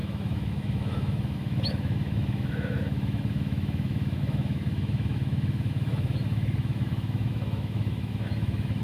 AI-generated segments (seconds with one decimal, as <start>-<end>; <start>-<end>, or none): 0.0-8.8